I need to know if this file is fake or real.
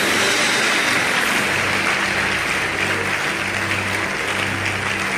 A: real